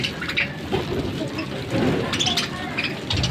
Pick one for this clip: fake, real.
real